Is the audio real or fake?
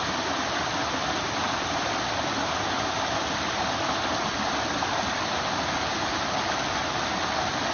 real